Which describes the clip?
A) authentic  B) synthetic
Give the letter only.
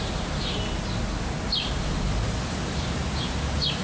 A